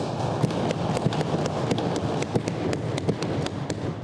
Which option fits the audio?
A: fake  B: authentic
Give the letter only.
B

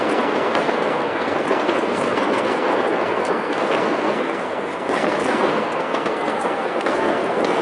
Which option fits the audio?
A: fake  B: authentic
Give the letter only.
A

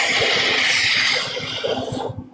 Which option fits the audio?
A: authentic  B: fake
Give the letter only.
A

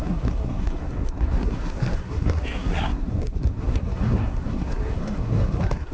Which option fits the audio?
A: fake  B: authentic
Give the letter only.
A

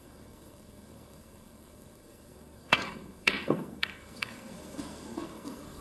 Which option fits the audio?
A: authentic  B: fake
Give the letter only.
B